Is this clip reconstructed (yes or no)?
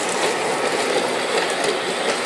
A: no